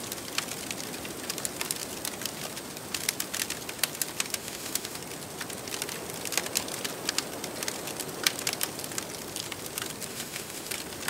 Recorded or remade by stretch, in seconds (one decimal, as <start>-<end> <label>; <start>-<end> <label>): 0.0-4.4 recorded; 4.4-5.0 remade; 5.0-10.1 recorded; 10.1-10.7 remade; 10.7-11.1 recorded